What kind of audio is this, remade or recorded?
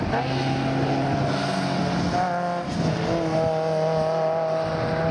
recorded